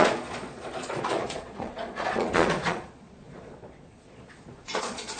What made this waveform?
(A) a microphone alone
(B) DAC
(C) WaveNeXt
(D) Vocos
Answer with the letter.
D